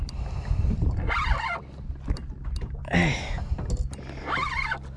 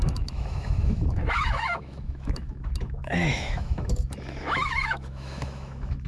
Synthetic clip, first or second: second